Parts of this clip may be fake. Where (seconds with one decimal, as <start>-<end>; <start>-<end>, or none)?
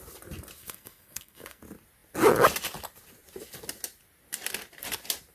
0.6-1.6